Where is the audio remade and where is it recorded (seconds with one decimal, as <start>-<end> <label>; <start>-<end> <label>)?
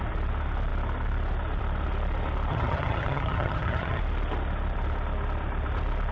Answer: 0.0-2.5 recorded; 2.5-4.0 remade; 4.0-6.1 recorded